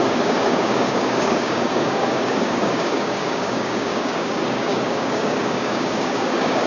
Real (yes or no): no